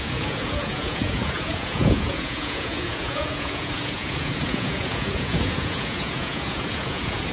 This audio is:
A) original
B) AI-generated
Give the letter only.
B